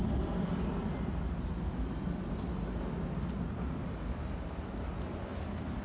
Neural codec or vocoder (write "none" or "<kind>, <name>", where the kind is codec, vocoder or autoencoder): none